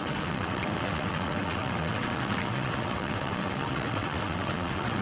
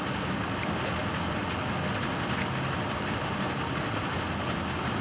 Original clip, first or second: second